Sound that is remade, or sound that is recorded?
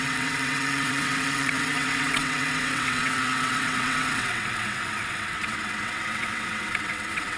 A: remade